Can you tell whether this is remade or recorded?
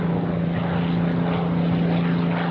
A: recorded